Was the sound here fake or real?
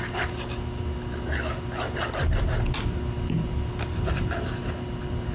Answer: real